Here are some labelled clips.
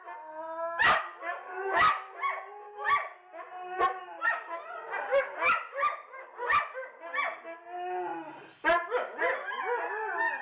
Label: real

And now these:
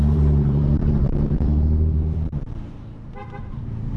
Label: fake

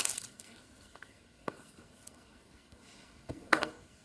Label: fake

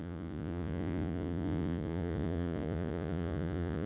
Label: fake